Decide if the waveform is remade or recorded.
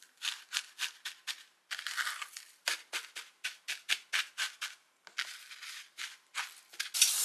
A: recorded